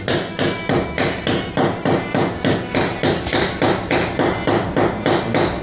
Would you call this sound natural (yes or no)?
no